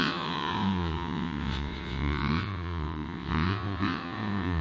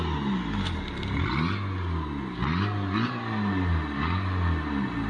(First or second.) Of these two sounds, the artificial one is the first